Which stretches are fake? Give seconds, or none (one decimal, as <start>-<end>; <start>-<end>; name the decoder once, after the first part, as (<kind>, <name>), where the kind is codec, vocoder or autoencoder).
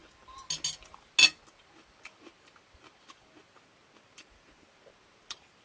none